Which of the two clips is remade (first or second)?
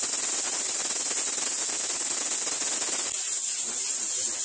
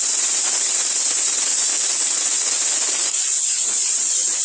second